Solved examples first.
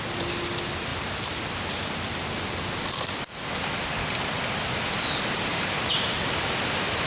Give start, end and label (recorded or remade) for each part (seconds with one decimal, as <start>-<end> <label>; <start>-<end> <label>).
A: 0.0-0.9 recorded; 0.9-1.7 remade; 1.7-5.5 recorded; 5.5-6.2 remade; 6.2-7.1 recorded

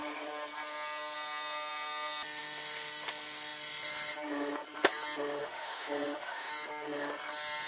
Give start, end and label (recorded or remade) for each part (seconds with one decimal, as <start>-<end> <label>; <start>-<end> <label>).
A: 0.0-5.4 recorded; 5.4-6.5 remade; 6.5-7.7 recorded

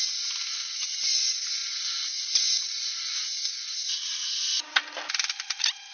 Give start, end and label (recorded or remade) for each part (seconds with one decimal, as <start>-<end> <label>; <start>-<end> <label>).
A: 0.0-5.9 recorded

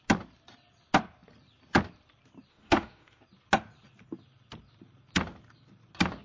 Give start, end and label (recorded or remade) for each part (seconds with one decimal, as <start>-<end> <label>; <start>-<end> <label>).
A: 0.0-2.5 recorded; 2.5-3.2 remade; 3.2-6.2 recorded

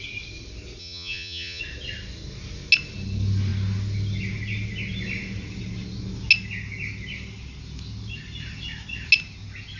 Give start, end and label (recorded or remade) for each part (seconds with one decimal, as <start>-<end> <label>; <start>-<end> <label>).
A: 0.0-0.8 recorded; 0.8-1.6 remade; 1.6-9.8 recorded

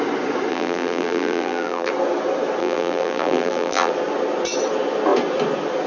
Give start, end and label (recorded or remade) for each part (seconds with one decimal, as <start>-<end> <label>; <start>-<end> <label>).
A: 0.0-0.5 recorded; 0.5-1.9 remade; 1.9-2.6 recorded; 2.6-3.9 remade; 3.9-5.9 recorded

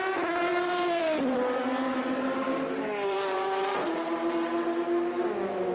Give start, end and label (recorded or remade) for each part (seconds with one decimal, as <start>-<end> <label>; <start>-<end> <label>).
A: 0.0-0.5 recorded; 0.5-3.9 remade; 3.9-5.7 recorded